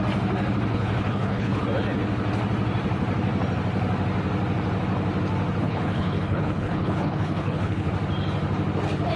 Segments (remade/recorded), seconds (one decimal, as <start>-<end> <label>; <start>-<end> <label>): 0.0-0.7 recorded; 0.7-1.6 remade; 1.6-5.6 recorded; 5.6-7.9 remade; 7.9-9.2 recorded